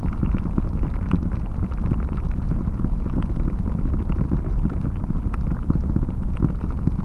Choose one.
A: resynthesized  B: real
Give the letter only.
B